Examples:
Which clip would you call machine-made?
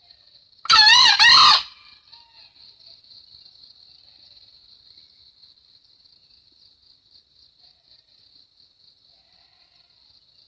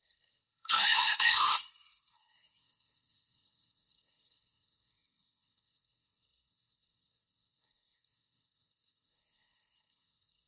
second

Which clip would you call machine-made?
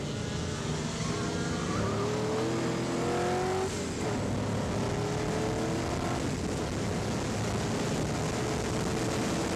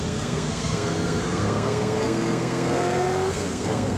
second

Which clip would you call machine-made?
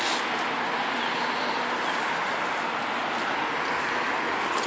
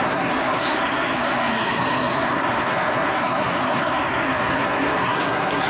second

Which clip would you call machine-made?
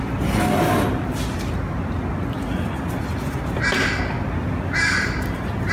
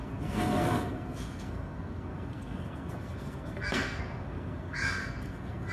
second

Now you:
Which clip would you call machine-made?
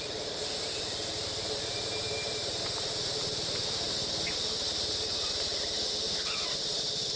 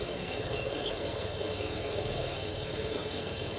second